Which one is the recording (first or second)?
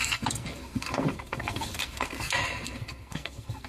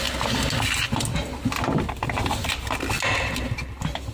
second